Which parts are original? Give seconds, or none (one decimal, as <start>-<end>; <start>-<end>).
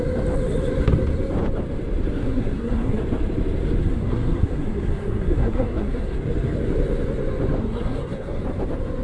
0.0-2.2; 3.0-3.8; 6.2-7.6; 8.4-9.0